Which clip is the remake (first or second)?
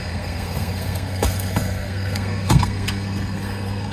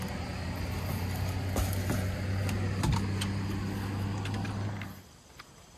first